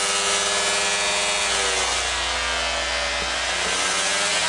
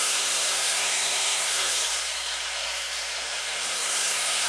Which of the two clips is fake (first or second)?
second